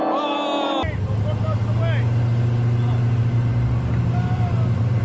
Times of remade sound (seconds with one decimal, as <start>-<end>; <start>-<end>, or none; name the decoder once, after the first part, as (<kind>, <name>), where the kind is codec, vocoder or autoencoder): none